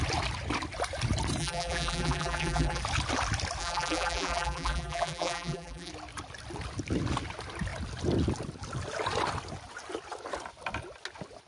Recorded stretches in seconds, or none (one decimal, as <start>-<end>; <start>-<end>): 0.0-1.4; 2.8-3.6; 5.9-11.5